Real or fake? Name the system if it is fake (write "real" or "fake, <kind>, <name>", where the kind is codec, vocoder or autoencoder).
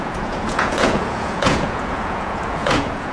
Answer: fake, vocoder, Vocos